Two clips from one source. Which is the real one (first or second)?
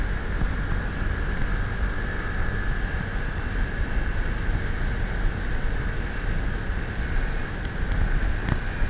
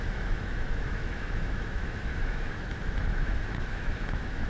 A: first